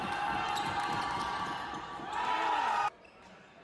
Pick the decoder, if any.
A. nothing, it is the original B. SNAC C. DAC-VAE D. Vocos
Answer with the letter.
A